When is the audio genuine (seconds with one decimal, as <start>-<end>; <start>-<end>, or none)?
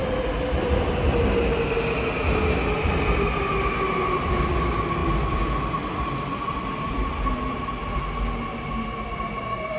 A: 1.2-5.0; 8.0-9.8